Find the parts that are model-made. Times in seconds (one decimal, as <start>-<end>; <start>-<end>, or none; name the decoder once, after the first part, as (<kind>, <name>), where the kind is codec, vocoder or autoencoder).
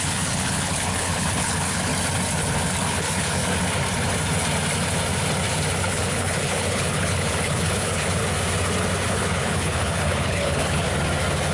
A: 0.0-1.9 (codec, HILCodec); 2.8-3.4; 5.8-8.2; 9.1-10.9